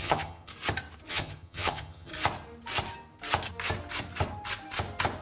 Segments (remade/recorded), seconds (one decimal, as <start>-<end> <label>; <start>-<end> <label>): 0.0-0.5 remade; 0.5-1.1 recorded; 1.1-2.1 remade; 2.1-5.2 recorded